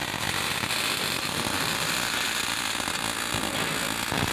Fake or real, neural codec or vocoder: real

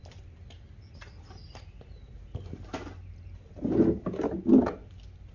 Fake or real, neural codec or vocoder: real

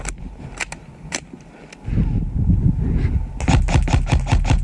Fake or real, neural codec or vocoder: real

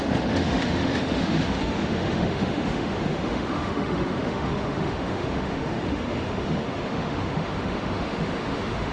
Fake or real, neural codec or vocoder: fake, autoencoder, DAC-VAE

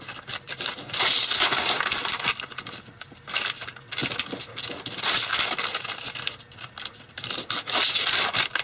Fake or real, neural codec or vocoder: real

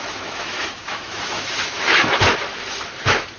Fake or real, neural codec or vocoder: fake, autoencoder, DAC-VAE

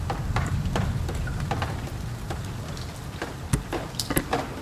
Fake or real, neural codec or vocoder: real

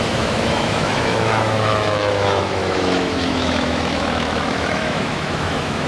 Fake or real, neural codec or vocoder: fake, autoencoder, DAC-VAE